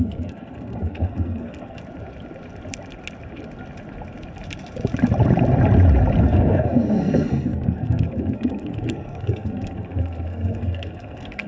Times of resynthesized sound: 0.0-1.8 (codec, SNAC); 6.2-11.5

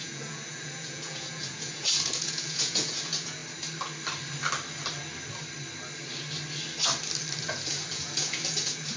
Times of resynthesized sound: 0.0-3.4 (vocoder, Vocos); 7.4-9.0